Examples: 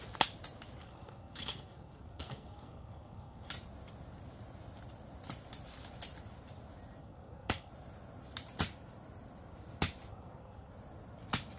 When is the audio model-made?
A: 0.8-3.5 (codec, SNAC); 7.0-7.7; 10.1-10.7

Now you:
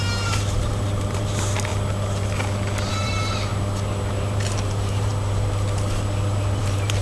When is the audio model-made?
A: 0.0-1.7 (vocoder, BigVGAN v2); 2.9-3.5; 4.1-5.1; 6.6-7.0

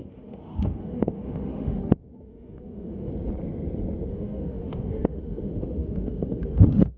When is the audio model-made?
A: 0.0-3.1 (autoencoder, DAC-VAE); 4.1-7.0

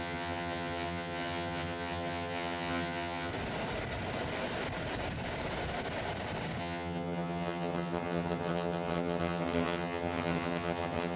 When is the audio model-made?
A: 0.0-3.3 (vocoder, HiFi-GAN); 6.6-11.2

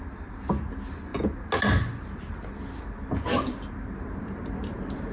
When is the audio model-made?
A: none

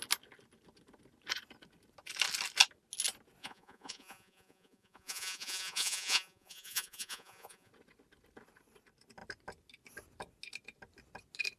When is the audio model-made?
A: 3.4-7.7 (vocoder, Vocos)

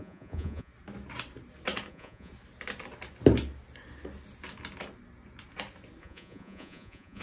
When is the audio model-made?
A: 0.0-0.7 (vocoder, Vocos); 1.9-2.3; 6.0-7.2